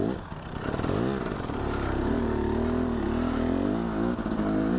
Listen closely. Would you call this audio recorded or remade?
recorded